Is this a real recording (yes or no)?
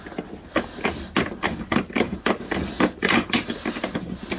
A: yes